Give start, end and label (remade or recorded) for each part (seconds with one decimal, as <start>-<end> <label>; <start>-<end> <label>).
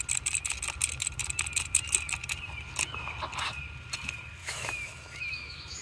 0.0-4.4 recorded; 4.4-5.8 remade